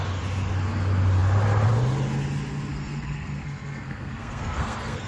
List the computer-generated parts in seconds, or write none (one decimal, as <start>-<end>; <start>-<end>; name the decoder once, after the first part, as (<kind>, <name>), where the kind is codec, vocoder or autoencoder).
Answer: 2.7-5.1 (codec, SNAC)